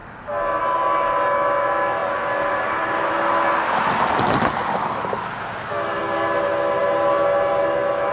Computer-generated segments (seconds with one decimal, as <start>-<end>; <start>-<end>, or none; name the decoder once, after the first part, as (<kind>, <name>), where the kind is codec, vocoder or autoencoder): none